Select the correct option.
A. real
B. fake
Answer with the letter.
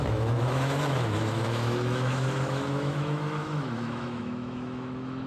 B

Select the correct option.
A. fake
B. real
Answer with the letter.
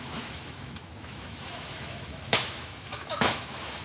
A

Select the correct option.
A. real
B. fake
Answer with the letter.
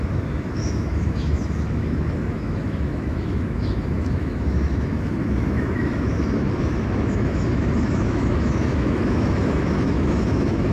B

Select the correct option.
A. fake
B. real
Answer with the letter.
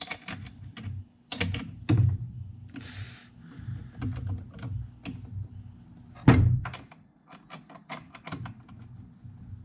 B